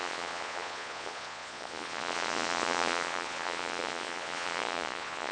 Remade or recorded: remade